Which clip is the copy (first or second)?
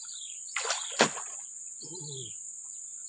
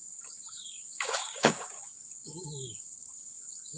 second